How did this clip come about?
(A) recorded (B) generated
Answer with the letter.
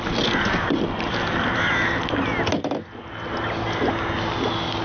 A